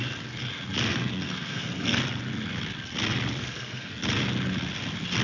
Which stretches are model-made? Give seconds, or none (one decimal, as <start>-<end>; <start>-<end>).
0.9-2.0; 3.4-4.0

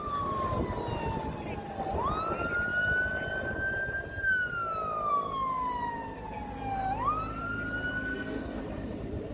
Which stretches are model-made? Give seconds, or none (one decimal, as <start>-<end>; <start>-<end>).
8.1-8.6

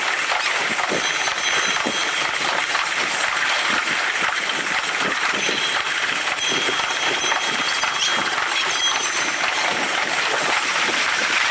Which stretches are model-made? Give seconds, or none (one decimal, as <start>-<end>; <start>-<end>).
2.7-7.7; 8.1-9.1

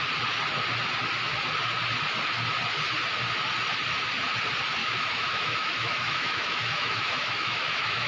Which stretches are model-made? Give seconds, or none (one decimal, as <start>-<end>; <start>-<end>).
4.8-8.1

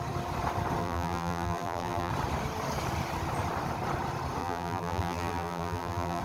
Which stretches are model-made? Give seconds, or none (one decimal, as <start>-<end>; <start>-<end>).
0.8-2.1; 4.4-6.2